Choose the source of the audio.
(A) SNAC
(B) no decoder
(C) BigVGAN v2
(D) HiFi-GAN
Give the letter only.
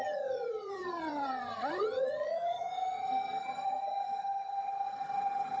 D